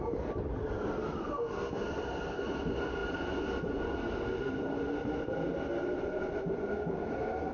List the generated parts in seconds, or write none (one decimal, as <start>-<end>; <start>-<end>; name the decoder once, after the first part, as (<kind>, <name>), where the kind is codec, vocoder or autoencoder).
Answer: none